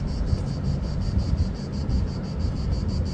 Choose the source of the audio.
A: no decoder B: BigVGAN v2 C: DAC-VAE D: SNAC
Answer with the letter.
A